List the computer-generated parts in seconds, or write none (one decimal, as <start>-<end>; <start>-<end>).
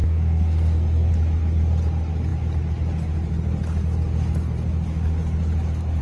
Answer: 0.0-1.1